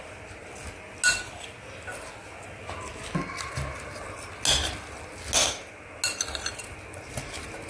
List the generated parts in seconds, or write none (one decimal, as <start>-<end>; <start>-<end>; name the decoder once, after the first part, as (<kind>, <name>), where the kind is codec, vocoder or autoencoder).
none